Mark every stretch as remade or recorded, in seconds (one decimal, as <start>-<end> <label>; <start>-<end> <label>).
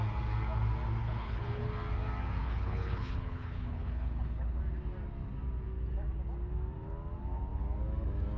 0.0-1.0 recorded; 1.0-1.6 remade; 1.6-2.4 recorded; 2.4-4.6 remade; 4.6-8.4 recorded